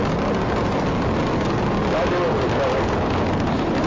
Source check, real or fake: real